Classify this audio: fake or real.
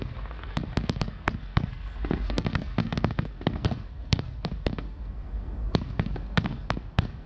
fake